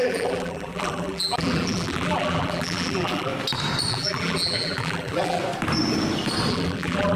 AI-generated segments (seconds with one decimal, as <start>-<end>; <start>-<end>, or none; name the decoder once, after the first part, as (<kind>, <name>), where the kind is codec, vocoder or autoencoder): 0.0-3.3 (vocoder, BigVGAN v2); 3.9-5.4; 6.5-7.2